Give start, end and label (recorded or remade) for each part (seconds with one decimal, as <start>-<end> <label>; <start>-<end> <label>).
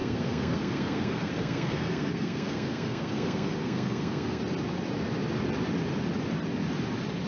0.0-4.4 remade; 4.4-7.3 recorded